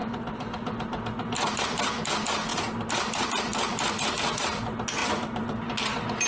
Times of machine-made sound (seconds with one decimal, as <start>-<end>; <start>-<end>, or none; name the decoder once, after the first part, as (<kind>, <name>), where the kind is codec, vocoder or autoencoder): none